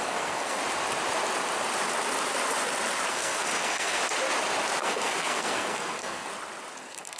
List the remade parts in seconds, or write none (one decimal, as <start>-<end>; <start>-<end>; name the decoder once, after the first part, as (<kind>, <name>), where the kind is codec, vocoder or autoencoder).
0.0-0.6 (codec, SNAC); 3.1-4.0; 4.8-6.3; 6.8-7.2